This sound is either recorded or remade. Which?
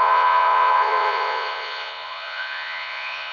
remade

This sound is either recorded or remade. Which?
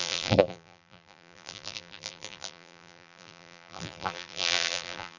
remade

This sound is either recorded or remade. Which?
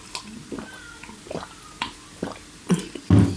recorded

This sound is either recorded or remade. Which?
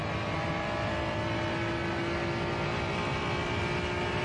recorded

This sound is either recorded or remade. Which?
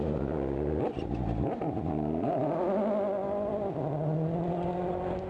recorded